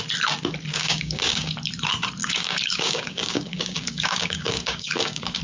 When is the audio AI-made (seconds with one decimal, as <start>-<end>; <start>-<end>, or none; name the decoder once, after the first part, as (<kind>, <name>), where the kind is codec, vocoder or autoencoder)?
0.7-1.5 (codec, DAC); 2.2-5.4